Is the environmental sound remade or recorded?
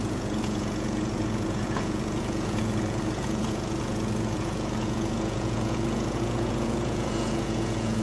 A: remade